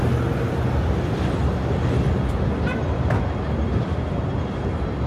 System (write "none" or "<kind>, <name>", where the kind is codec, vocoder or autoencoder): none